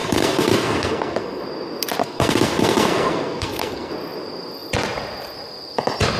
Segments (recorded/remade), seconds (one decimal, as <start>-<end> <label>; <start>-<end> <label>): 0.0-1.4 remade; 1.4-2.0 recorded; 2.0-3.9 remade; 3.9-6.2 recorded